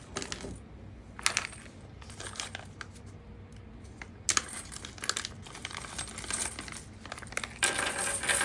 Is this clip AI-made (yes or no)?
no